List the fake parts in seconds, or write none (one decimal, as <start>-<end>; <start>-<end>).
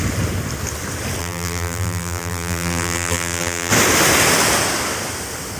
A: 1.2-3.7